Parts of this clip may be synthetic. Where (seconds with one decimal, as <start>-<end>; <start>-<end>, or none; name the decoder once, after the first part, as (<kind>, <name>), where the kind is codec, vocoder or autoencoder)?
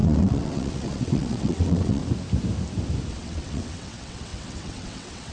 0.0-2.0 (vocoder, WaveNeXt); 3.1-5.3